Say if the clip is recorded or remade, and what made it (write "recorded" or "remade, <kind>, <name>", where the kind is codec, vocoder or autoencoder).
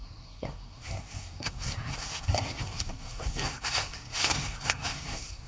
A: remade, codec, SNAC